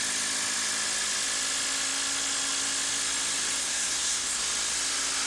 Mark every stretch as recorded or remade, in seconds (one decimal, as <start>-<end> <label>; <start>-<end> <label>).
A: 0.0-3.6 recorded; 3.6-4.4 remade; 4.4-5.3 recorded

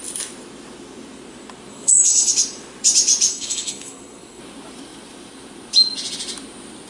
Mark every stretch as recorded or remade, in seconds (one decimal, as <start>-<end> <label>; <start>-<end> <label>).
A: 0.0-1.7 recorded; 1.7-2.3 remade; 2.3-3.3 recorded; 3.3-4.4 remade; 4.4-6.9 recorded

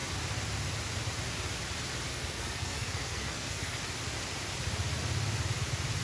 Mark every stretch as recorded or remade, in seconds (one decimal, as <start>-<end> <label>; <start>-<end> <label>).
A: 0.0-2.1 recorded; 2.1-3.8 remade; 3.8-6.0 recorded

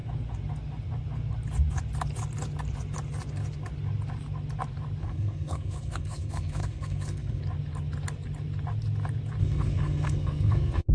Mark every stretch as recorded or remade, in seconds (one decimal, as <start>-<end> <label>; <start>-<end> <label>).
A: 0.0-5.0 recorded; 5.0-7.4 remade; 7.4-9.4 recorded; 9.4-10.9 remade

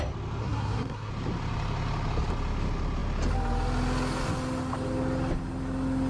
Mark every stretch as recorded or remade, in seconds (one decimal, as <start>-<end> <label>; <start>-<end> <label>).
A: 0.0-0.4 recorded; 0.4-1.1 remade; 1.1-6.1 recorded

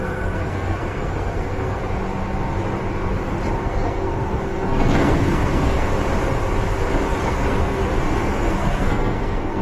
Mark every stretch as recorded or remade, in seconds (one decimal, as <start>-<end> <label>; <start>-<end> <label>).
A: 0.0-1.8 remade; 1.8-3.6 recorded; 3.6-5.9 remade; 5.9-7.2 recorded; 7.2-9.6 remade

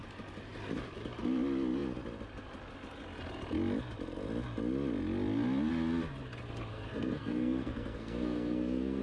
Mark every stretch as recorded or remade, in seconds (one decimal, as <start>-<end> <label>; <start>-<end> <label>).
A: 0.0-6.7 recorded; 6.7-9.0 remade

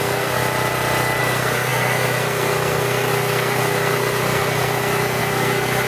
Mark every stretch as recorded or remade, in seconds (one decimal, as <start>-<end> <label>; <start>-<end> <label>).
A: 0.0-0.4 remade; 0.4-1.2 recorded; 1.2-5.9 remade